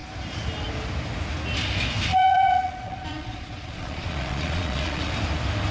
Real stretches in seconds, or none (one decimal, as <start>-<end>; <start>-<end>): 0.0-2.1; 5.1-5.7